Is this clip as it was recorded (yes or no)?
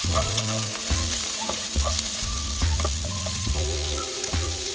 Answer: no